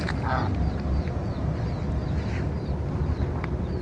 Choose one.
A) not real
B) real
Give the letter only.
B